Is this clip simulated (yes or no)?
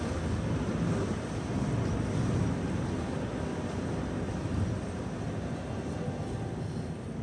no